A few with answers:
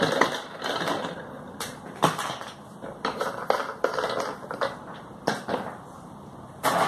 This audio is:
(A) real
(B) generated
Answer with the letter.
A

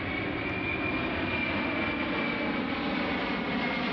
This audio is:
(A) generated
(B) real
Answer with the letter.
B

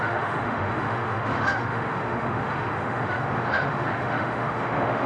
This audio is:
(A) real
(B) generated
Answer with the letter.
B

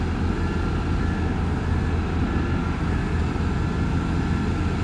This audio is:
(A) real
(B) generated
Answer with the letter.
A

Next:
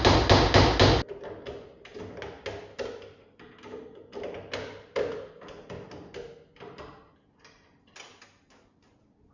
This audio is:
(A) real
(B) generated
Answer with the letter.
A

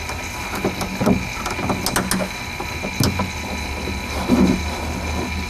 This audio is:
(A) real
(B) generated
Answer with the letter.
A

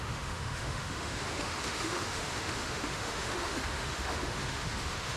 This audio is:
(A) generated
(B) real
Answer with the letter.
A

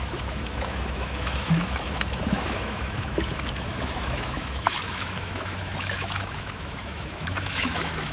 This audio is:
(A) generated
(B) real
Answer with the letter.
A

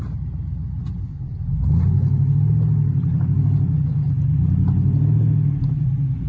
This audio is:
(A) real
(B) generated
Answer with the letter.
A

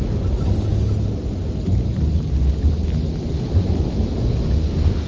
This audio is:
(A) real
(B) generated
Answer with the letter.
A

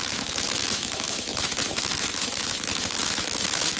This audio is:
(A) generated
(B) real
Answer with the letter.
A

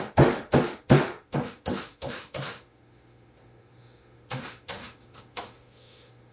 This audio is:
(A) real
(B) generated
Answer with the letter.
B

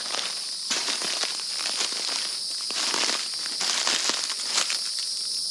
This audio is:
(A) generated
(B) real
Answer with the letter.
B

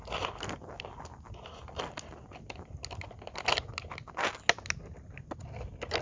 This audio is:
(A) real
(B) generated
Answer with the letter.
A